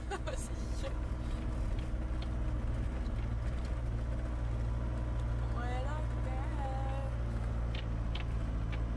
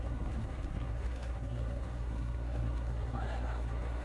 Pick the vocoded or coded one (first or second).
second